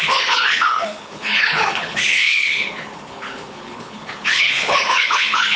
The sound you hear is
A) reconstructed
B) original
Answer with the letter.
A